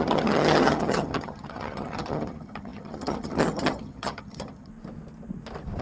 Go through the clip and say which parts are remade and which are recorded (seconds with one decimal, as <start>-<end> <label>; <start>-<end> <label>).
0.0-4.7 remade; 4.7-5.8 recorded